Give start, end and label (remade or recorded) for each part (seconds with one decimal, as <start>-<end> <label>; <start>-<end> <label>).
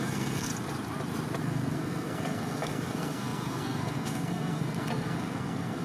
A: 0.0-0.5 remade; 0.5-1.4 recorded; 1.4-5.8 remade